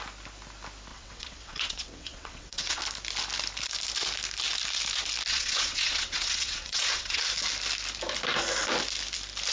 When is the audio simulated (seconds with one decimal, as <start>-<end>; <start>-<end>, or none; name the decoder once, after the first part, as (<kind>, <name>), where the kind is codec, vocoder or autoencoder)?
0.9-2.8 (vocoder, WaveNeXt); 5.3-7.2

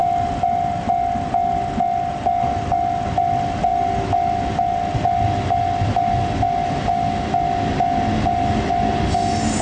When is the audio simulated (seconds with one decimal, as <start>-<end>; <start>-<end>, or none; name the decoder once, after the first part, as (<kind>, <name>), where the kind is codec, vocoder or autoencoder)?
none

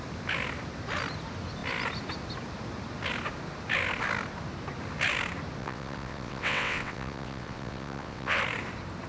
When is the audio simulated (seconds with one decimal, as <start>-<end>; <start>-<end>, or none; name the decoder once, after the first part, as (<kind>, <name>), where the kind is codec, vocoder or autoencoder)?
5.6-8.4 (vocoder, WaveNeXt)

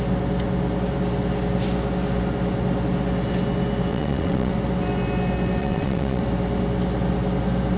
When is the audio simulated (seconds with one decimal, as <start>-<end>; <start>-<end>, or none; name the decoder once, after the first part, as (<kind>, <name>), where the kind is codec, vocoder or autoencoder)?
3.9-4.5 (vocoder, WaveNeXt); 5.6-6.2

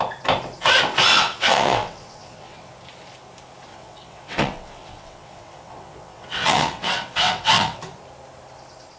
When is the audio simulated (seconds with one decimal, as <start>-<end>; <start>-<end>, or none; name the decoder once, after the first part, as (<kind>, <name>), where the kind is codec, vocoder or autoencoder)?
1.1-2.7 (vocoder, WaveNeXt); 3.7-7.8

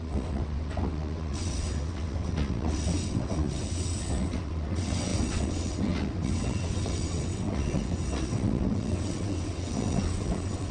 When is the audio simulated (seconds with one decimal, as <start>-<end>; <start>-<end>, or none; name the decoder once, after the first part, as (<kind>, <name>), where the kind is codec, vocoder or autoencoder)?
0.0-10.7 (vocoder, WaveNeXt)

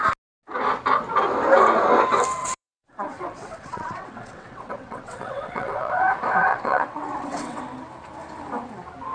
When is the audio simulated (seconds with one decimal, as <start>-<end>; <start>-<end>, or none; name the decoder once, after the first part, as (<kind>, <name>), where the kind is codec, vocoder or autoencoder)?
2.4-5.9 (vocoder, WaveNeXt); 6.5-7.6